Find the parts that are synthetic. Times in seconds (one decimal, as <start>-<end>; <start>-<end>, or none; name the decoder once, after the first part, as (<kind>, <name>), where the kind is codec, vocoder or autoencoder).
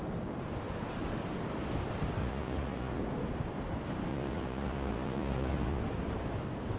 2.2-3.0 (vocoder, Vocos); 4.1-5.8